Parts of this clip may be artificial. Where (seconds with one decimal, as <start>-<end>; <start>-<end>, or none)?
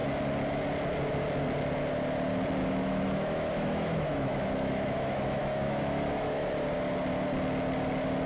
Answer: 2.6-6.5